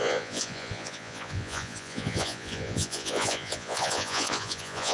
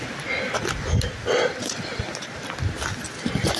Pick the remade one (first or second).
first